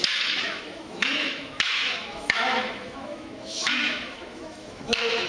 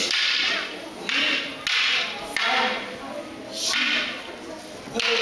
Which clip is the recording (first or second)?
second